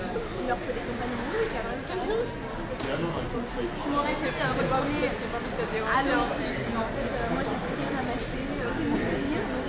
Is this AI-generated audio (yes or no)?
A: no